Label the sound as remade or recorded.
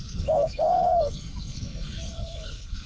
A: remade